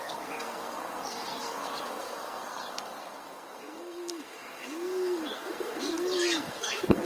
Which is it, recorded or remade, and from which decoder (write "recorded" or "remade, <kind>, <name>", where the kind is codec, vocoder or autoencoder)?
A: remade, codec, SNAC